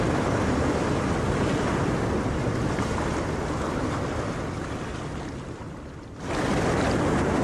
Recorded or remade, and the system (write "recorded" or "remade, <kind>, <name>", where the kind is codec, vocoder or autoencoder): recorded